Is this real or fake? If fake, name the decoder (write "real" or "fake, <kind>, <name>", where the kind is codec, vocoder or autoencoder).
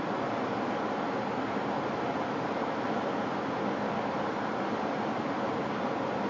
real